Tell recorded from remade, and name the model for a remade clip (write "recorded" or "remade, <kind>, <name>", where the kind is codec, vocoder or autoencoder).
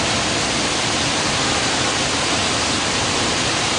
recorded